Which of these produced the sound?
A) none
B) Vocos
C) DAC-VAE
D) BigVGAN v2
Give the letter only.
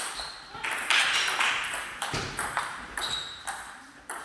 D